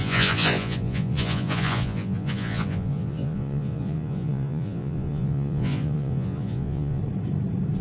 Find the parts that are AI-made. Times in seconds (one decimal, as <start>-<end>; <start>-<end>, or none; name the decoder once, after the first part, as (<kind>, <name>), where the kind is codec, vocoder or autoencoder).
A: 0.0-7.0 (vocoder, Vocos)